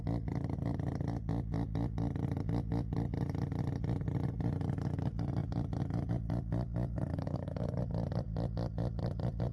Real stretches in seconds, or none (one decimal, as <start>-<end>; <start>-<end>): 0.0-7.1; 7.8-9.5